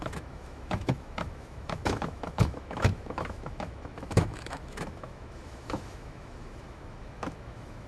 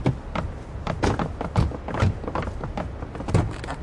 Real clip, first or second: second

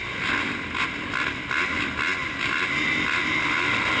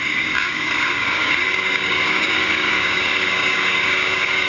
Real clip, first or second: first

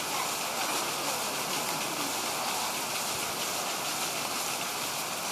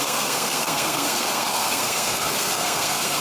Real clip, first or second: first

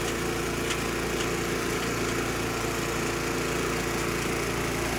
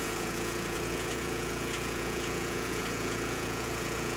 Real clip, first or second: first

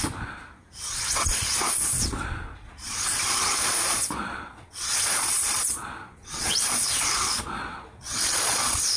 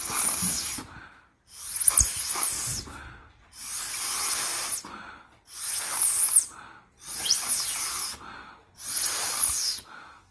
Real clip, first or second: second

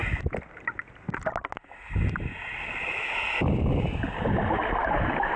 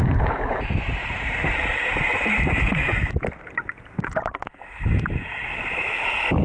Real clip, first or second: first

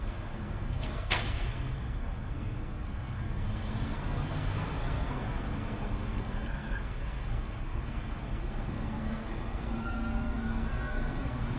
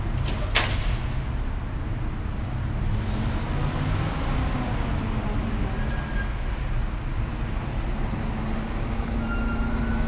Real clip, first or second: second